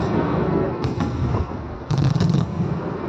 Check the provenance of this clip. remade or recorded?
remade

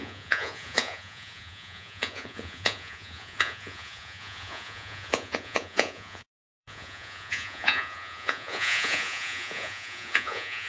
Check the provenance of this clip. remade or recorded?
remade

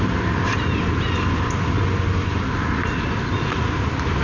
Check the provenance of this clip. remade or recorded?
recorded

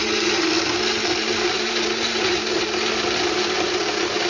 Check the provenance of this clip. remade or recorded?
recorded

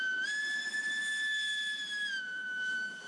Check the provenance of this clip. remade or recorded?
recorded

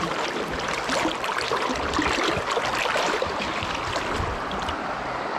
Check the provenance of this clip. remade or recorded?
recorded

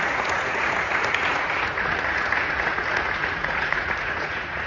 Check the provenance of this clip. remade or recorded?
remade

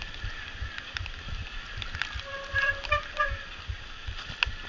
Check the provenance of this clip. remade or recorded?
recorded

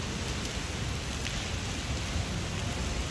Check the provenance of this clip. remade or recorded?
recorded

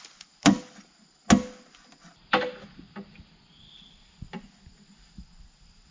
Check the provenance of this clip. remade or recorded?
recorded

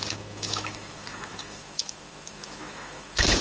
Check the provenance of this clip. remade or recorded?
remade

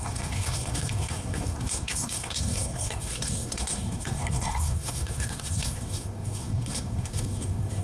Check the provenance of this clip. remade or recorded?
remade